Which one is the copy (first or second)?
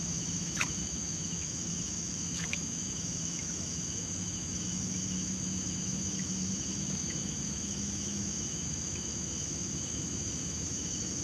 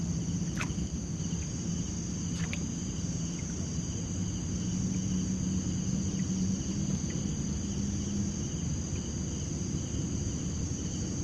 first